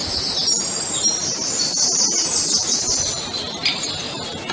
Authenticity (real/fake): real